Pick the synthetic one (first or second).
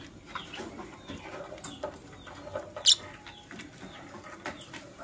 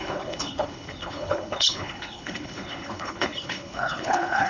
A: second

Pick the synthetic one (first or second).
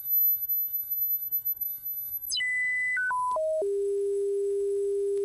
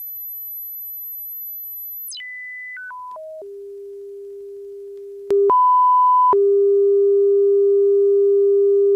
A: first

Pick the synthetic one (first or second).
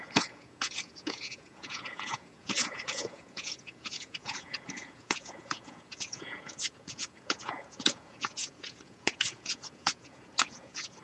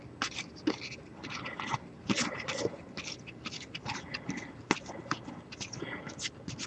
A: first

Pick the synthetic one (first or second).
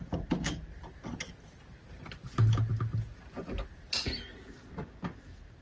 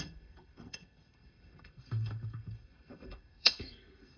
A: second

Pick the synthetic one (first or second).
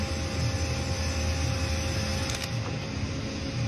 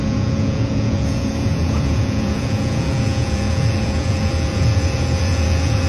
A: second